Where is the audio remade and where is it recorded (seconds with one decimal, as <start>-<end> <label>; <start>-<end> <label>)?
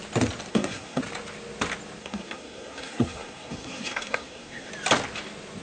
0.0-0.5 recorded; 0.5-1.0 remade; 1.0-2.0 recorded; 2.0-4.7 remade; 4.7-5.6 recorded